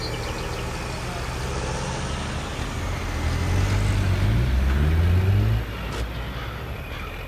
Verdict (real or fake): real